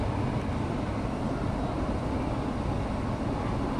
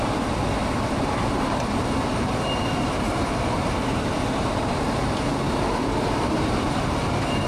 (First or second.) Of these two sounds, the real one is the first